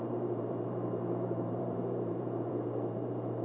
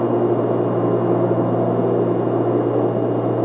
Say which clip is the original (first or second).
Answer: second